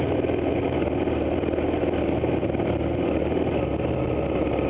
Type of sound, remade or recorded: recorded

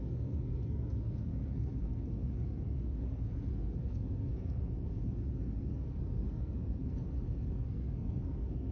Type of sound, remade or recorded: remade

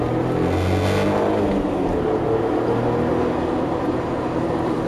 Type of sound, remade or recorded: recorded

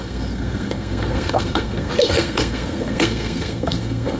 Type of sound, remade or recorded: remade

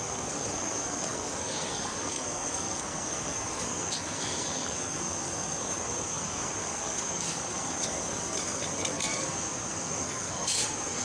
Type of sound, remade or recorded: remade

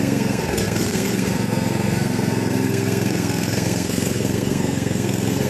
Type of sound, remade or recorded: remade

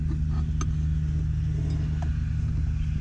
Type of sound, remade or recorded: recorded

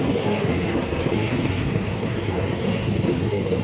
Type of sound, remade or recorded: remade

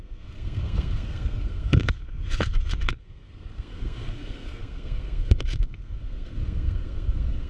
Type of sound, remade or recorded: remade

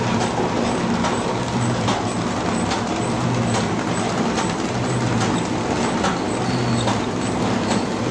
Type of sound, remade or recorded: recorded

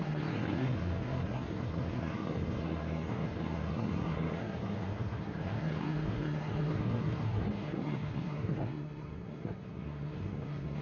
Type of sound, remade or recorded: remade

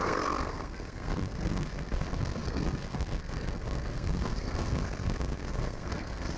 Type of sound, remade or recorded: remade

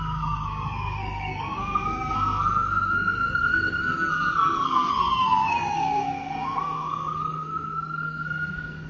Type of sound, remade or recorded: remade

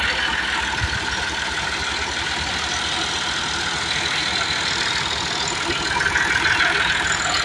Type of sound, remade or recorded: recorded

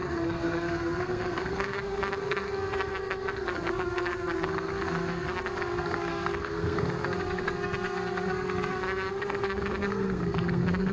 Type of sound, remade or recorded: remade